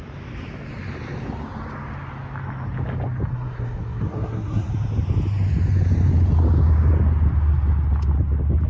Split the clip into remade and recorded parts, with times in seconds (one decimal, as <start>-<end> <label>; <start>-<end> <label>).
0.0-3.3 recorded; 3.3-4.7 remade; 4.7-8.7 recorded